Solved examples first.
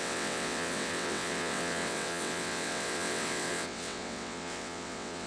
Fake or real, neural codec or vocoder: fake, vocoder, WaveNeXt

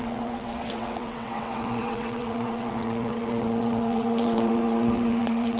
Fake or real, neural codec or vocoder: fake, vocoder, WaveNeXt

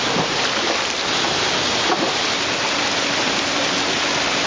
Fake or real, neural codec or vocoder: real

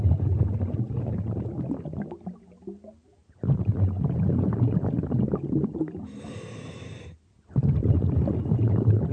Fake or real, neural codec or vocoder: real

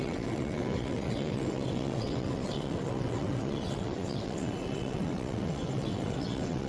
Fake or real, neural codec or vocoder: fake, vocoder, WaveNeXt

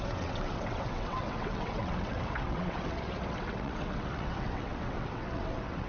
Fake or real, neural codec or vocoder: fake, vocoder, WaveNeXt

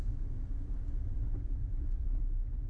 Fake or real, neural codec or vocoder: real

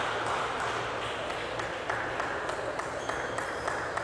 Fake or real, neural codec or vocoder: real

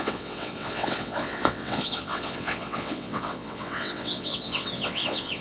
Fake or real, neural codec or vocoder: fake, vocoder, WaveNeXt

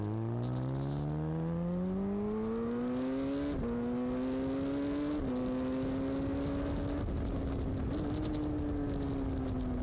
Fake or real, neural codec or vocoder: real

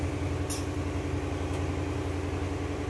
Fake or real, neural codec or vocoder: real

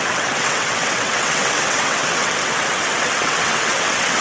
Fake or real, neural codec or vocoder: fake, vocoder, WaveNeXt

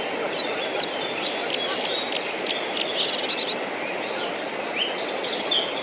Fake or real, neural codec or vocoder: real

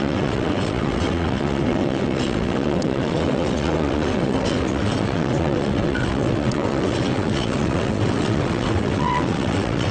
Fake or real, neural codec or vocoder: fake, vocoder, WaveNeXt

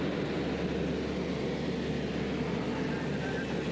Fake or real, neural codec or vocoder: real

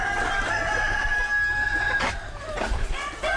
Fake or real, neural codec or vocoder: real